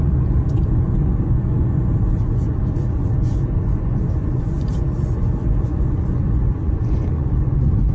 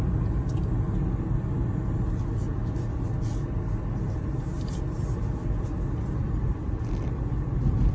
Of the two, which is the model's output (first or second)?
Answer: first